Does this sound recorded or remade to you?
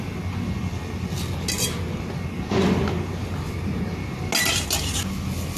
recorded